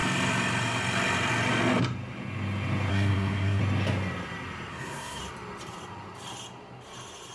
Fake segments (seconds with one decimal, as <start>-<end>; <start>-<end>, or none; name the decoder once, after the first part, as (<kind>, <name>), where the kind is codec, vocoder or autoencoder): 2.9-3.6 (codec, SNAC); 4.7-5.2